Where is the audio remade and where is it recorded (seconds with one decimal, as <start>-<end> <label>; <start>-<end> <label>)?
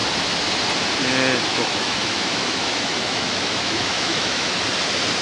0.0-1.5 recorded; 1.5-4.5 remade; 4.5-5.2 recorded